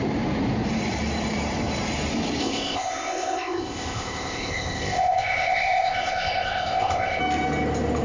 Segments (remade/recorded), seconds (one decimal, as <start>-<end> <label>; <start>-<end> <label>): 0.0-2.4 recorded; 2.4-7.2 remade; 7.2-8.0 recorded